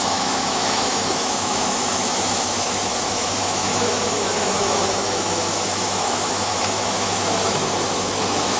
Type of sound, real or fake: fake